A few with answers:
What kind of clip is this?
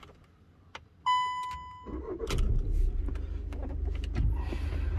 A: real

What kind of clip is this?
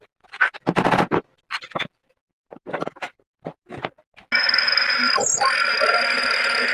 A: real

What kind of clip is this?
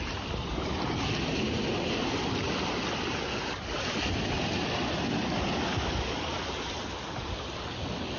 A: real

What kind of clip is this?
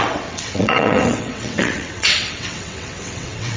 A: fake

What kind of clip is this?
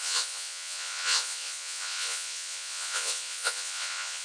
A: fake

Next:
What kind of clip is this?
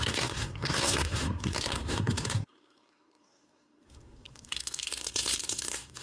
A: fake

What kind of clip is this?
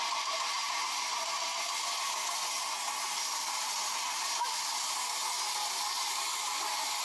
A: real